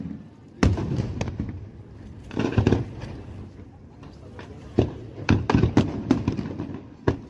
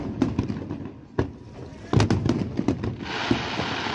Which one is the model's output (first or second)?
first